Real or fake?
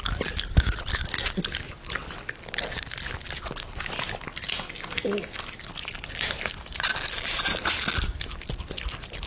real